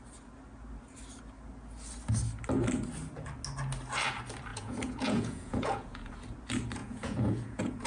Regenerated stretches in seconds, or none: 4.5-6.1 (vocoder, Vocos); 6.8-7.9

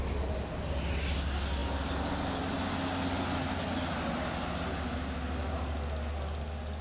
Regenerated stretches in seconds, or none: none